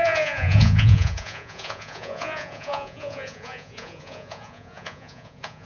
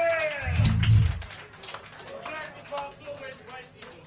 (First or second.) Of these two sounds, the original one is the second